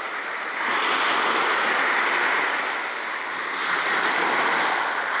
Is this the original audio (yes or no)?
yes